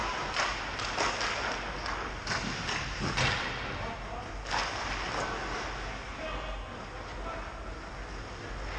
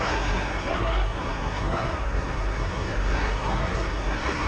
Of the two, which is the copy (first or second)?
second